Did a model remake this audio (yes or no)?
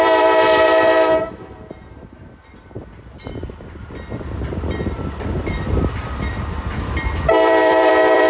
yes